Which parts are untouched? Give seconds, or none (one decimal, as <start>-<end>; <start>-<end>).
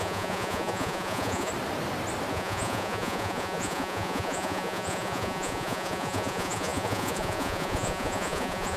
1.5-2.3